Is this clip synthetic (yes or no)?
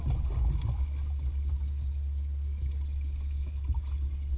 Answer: no